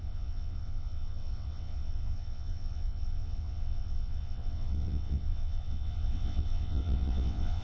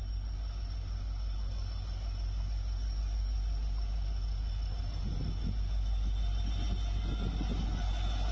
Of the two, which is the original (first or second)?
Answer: second